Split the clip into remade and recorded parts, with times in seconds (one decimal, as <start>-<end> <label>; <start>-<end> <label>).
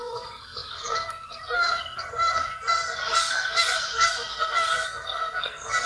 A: 0.0-5.9 remade